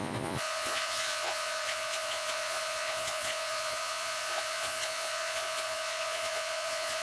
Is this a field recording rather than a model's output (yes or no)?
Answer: no